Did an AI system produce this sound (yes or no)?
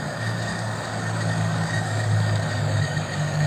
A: yes